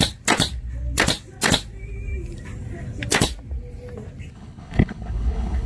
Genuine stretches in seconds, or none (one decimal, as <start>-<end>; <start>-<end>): 0.0-4.3